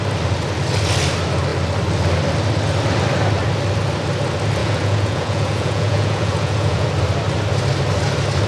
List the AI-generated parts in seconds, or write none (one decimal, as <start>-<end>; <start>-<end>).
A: 4.6-6.9